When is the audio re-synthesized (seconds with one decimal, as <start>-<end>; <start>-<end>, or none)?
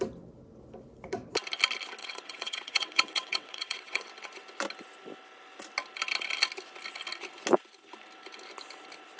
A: 2.0-4.1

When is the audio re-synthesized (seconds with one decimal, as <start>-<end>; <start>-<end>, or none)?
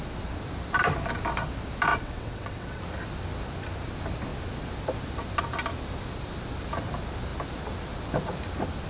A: 1.9-2.8